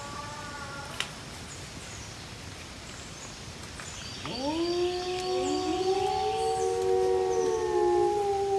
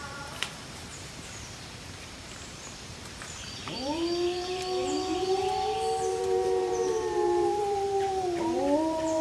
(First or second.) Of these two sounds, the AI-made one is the second